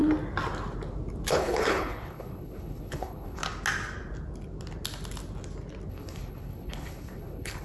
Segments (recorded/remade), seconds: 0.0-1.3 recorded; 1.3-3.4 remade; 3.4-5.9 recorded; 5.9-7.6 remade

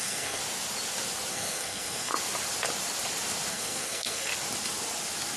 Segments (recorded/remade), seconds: 0.0-0.4 remade; 0.4-1.3 recorded; 1.3-2.1 remade; 2.1-3.5 recorded; 3.5-4.3 remade; 4.3-5.4 recorded

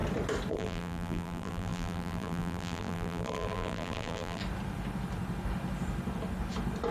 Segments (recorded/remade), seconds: 0.0-0.5 recorded; 0.5-4.4 remade; 4.4-6.9 recorded

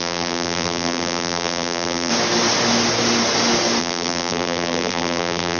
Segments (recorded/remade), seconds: 0.0-2.1 remade; 2.1-3.8 recorded; 3.8-5.6 remade

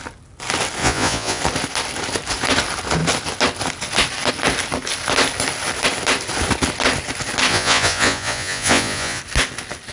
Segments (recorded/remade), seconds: 0.0-0.8 recorded; 0.8-1.4 remade; 1.4-7.5 recorded; 7.5-9.2 remade; 9.2-9.9 recorded

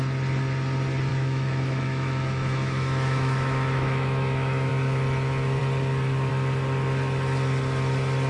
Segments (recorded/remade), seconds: 0.0-1.1 recorded; 1.1-4.7 remade; 4.7-8.3 recorded

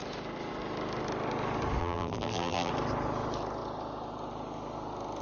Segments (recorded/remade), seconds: 0.0-1.8 recorded; 1.8-2.7 remade; 2.7-5.2 recorded

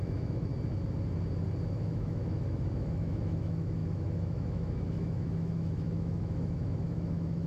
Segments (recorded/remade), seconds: 0.0-0.5 remade; 0.5-1.7 recorded; 1.7-7.5 remade